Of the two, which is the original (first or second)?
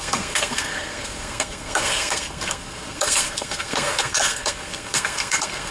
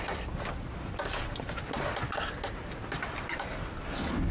second